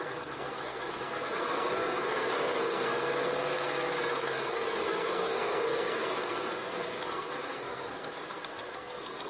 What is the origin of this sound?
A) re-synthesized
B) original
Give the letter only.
A